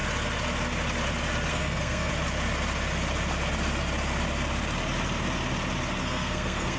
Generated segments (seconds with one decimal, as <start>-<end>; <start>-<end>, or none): 1.5-2.1; 6.0-6.8